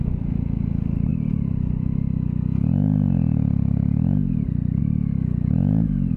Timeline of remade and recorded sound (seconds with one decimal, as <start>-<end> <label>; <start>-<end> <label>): 0.0-6.2 recorded